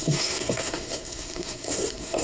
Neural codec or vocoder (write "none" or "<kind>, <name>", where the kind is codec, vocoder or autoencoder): codec, SNAC